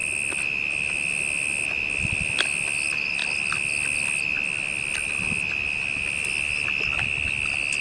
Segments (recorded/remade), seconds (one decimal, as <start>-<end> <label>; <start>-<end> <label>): 0.0-7.8 recorded